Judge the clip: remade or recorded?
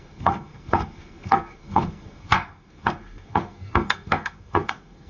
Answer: remade